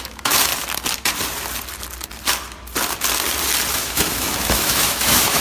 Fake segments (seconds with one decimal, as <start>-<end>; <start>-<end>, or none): 0.0-0.5; 3.7-5.4